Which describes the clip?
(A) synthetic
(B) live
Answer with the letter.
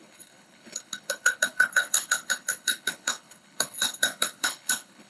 A